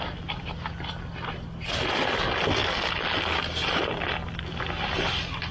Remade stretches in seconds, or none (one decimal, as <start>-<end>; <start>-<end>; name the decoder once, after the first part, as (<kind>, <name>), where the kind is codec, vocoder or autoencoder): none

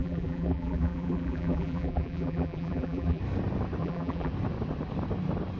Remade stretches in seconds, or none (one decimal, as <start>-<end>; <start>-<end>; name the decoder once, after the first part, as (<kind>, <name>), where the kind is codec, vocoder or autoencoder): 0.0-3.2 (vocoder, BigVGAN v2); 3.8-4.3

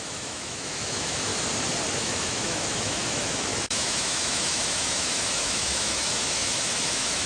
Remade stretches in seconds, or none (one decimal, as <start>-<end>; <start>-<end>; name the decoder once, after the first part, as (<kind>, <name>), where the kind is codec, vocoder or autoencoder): 0.0-1.3 (autoencoder, DAC-VAE); 1.9-7.3

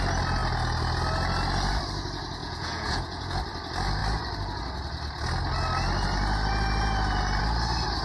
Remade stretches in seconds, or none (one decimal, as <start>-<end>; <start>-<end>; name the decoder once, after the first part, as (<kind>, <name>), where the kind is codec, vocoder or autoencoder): 2.4-3.3 (vocoder, Vocos)

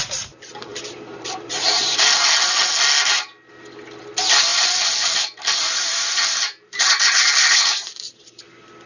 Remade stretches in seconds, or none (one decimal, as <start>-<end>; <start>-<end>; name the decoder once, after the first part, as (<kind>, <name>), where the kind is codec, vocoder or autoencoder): 0.7-2.0 (vocoder, BigVGAN v2); 4.5-8.4

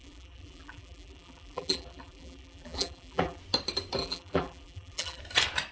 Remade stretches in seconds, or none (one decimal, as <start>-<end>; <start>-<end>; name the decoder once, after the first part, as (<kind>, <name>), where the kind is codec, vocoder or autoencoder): 0.0-3.4 (vocoder, BigVGAN v2); 4.0-5.2